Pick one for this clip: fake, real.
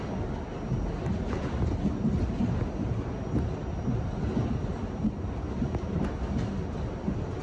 real